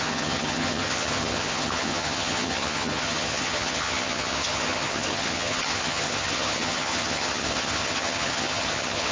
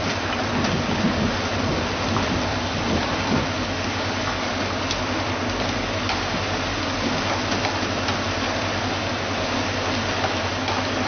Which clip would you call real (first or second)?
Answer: second